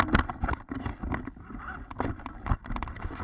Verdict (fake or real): real